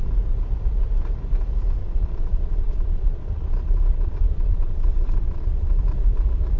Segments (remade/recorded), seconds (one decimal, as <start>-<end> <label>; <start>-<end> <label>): 0.0-1.8 recorded; 1.8-5.8 remade; 5.8-6.6 recorded